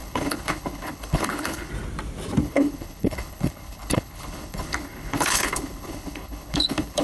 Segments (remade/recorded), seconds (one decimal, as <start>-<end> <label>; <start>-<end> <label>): 0.0-1.7 remade; 1.7-2.4 recorded; 2.4-7.0 remade